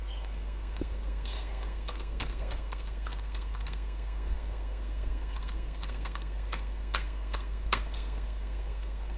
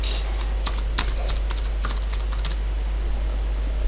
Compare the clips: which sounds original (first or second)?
second